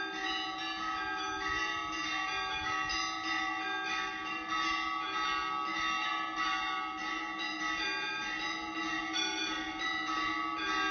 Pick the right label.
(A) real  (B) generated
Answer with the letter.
A